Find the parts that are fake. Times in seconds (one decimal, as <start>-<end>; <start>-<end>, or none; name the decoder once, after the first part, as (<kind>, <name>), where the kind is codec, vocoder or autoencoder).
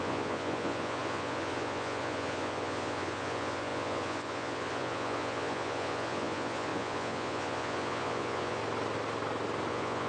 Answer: 0.0-8.6 (vocoder, Vocos); 9.7-10.1